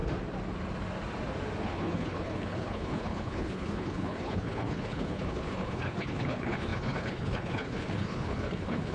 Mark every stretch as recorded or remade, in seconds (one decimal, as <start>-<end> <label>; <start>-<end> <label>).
0.0-1.6 recorded; 1.6-8.9 remade